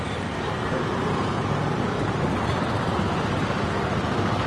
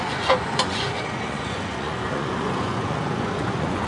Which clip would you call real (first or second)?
first